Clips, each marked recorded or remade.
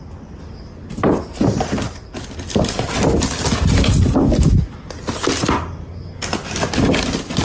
recorded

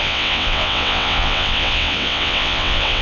remade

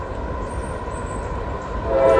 recorded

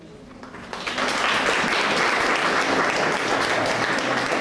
recorded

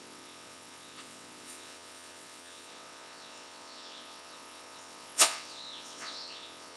remade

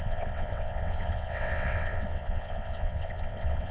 remade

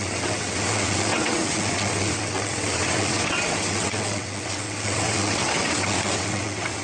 remade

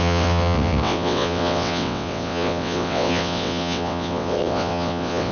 remade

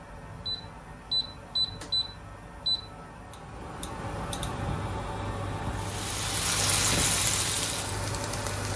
recorded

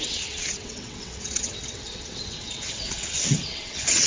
remade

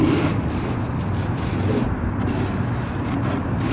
recorded